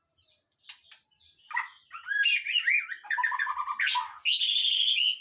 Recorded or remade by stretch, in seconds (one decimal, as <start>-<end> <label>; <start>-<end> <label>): 0.0-5.2 recorded